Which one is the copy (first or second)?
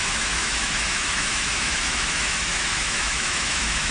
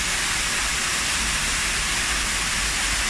first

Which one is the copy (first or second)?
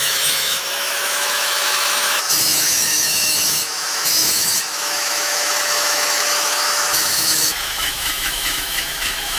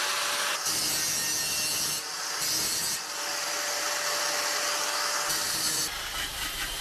first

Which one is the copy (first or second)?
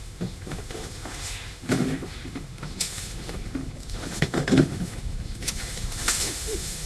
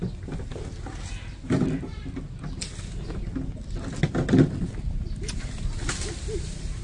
first